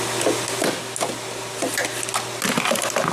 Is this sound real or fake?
real